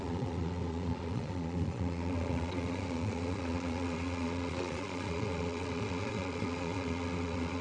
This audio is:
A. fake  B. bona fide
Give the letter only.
A